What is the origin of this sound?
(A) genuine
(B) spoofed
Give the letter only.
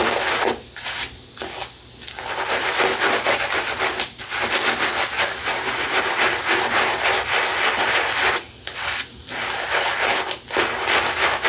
A